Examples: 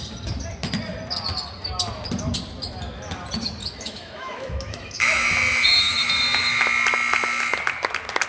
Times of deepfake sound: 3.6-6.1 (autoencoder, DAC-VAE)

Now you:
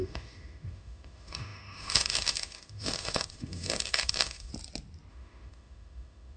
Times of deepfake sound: 0.0-4.5 (autoencoder, DAC-VAE); 5.1-6.4